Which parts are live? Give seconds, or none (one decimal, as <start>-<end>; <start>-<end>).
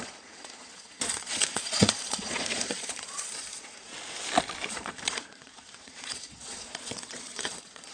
3.9-4.7